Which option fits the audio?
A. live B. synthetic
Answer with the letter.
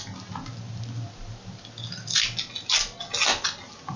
A